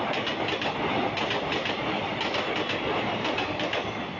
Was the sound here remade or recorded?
recorded